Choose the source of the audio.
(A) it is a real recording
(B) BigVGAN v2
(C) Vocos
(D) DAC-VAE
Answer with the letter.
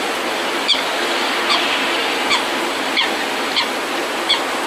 A